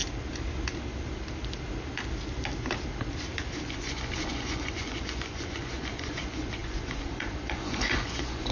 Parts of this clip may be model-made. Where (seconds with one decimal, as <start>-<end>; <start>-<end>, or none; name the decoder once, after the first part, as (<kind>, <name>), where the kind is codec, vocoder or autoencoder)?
3.7-8.5 (vocoder, Vocos)